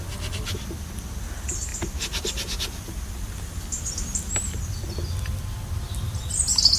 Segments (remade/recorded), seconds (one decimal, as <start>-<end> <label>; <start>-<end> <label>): 0.0-6.8 recorded